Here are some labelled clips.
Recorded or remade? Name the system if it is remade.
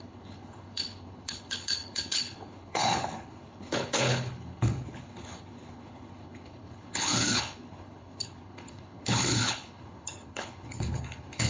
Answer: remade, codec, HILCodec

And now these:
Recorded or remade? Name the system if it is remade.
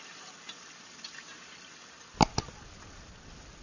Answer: recorded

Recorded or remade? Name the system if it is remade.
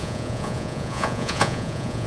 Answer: remade, vocoder, Vocos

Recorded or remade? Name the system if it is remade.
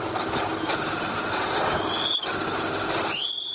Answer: recorded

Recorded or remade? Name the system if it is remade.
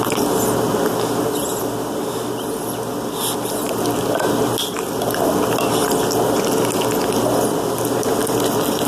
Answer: recorded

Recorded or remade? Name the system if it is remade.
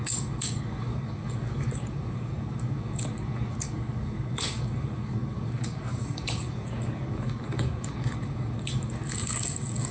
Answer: remade, codec, DAC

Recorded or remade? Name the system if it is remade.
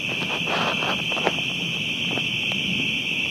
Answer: remade, vocoder, BigVGAN v2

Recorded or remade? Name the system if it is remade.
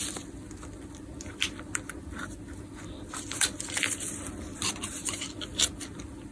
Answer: remade, vocoder, BigVGAN v2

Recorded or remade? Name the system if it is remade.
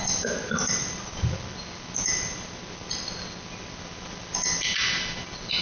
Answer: recorded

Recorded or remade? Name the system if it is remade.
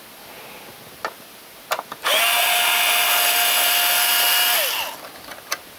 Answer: recorded